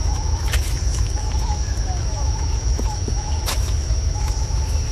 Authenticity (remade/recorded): remade